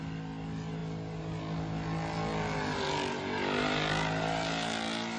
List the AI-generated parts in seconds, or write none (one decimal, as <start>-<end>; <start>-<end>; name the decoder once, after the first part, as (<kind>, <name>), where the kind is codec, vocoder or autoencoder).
none